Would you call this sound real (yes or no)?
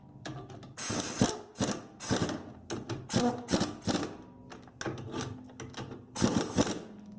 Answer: yes